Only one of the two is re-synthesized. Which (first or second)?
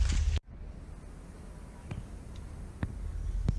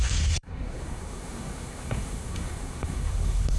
second